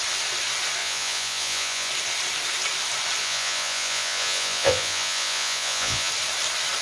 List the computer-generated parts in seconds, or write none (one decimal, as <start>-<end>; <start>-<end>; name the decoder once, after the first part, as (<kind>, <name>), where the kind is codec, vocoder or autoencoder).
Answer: 0.8-1.9 (vocoder, Vocos); 3.2-6.1